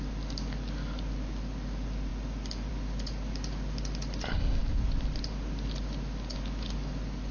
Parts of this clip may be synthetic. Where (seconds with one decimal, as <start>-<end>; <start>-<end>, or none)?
none